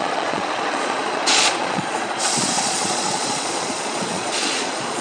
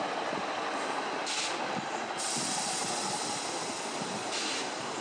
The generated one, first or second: first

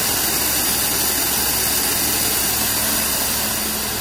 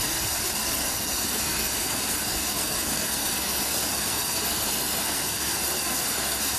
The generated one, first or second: second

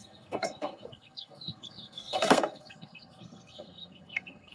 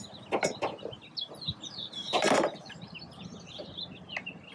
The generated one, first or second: first